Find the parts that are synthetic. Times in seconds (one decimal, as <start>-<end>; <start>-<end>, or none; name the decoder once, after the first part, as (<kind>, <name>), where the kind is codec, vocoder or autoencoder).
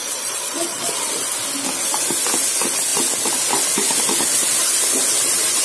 0.0-0.9 (vocoder, Vocos)